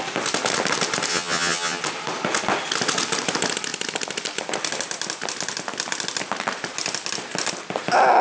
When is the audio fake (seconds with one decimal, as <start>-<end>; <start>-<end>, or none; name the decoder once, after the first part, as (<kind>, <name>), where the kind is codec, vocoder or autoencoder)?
1.1-1.8 (vocoder, HiFi-GAN)